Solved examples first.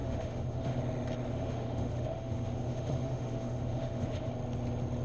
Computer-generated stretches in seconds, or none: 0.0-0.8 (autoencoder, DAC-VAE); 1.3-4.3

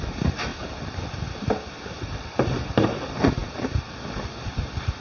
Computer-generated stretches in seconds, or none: 0.0-0.5 (vocoder, BigVGAN v2); 1.8-5.0